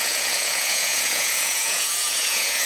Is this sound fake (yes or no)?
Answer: yes